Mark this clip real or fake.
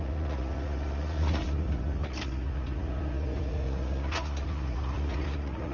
fake